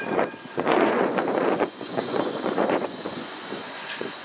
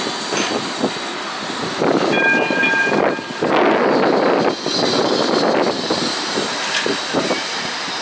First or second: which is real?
second